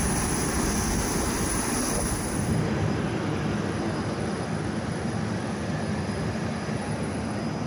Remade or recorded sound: recorded